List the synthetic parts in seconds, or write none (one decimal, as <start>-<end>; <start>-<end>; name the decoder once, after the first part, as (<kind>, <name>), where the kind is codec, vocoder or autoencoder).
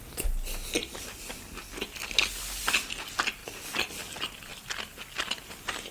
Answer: 3.4-3.9 (vocoder, BigVGAN v2)